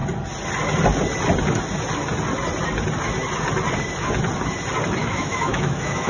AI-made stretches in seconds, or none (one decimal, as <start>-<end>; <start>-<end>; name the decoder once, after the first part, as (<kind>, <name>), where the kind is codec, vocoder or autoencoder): 5.0-6.1 (autoencoder, DAC-VAE)